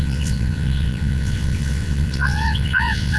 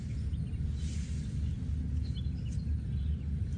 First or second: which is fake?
first